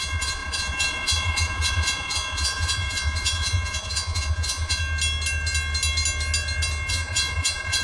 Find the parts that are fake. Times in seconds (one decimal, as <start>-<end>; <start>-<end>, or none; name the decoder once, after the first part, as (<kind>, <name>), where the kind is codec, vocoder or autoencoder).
0.0-4.8 (vocoder, Vocos); 6.9-7.8